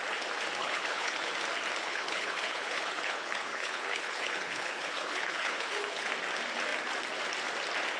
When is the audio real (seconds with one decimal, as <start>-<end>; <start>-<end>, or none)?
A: 0.0-0.6; 1.3-1.8; 6.1-8.0